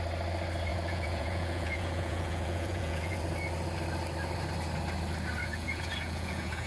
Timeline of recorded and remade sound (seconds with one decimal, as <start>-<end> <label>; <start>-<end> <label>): 0.0-0.7 recorded; 0.7-3.2 remade; 3.2-5.4 recorded; 5.4-6.7 remade